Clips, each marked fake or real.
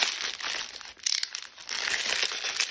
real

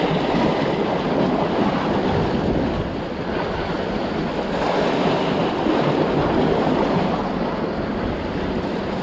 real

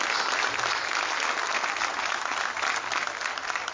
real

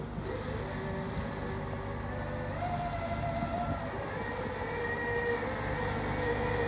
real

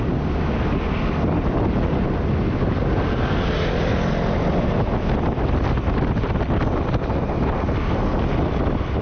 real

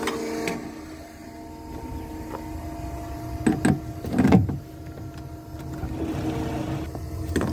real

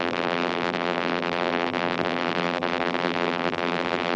fake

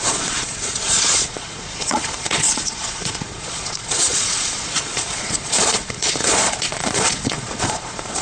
fake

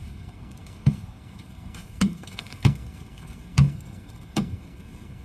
fake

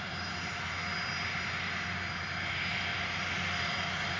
real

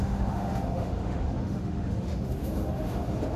fake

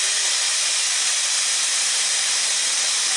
real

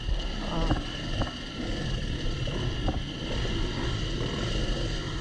real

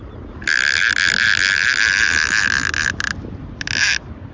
real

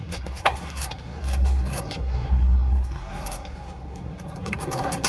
fake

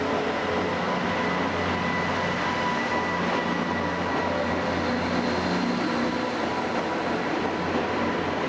real